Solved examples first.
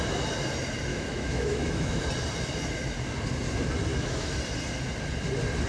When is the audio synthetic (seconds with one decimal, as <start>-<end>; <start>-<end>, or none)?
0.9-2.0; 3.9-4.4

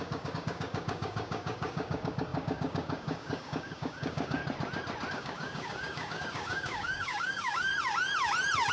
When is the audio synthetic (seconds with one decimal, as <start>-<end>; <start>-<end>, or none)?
0.0-4.4; 5.1-7.7

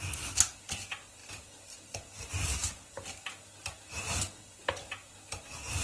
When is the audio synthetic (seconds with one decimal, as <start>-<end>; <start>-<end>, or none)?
1.2-1.8